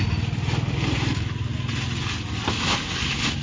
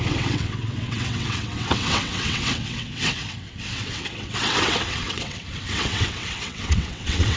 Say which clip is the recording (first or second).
first